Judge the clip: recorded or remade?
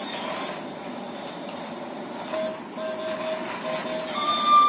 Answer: recorded